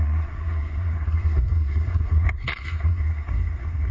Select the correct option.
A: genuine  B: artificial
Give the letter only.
B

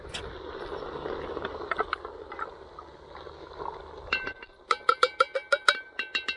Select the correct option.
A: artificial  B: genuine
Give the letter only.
B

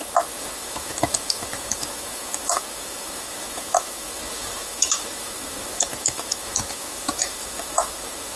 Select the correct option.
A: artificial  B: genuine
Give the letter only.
A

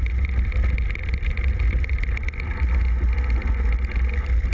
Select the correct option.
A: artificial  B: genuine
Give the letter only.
B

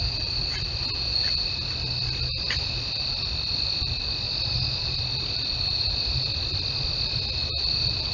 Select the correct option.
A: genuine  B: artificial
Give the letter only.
A